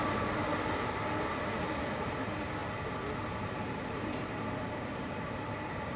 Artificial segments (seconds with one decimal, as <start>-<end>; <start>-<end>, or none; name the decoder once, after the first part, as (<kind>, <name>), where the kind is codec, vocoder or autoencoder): 2.6-6.0 (vocoder, BigVGAN v2)